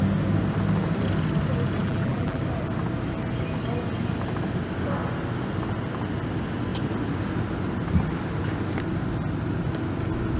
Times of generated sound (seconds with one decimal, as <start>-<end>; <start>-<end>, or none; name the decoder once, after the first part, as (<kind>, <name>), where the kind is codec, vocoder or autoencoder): 1.8-2.4 (vocoder, BigVGAN v2)